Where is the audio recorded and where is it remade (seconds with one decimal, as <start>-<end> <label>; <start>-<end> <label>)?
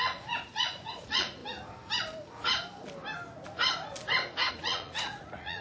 0.0-1.4 remade; 1.4-4.5 recorded; 4.5-5.6 remade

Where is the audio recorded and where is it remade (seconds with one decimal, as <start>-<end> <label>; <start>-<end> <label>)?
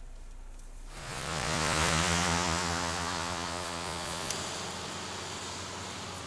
0.0-1.0 recorded; 1.0-4.3 remade; 4.3-6.3 recorded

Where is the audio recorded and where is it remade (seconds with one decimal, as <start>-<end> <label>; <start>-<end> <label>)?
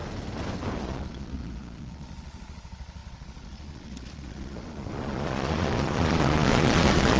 0.0-0.8 recorded; 0.8-7.2 remade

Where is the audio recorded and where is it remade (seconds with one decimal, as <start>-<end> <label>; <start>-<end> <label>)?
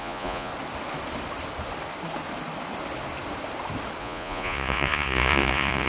0.0-0.5 remade; 0.5-4.0 recorded; 4.0-5.9 remade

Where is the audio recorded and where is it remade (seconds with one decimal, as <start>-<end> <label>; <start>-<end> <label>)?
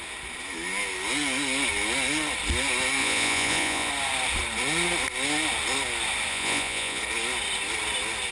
0.0-3.0 recorded; 3.0-3.9 remade; 3.9-6.3 recorded; 6.3-7.0 remade; 7.0-8.3 recorded